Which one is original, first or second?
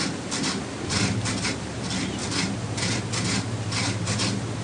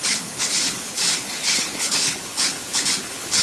first